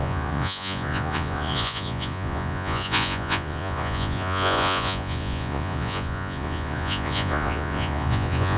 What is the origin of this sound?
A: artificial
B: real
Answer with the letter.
A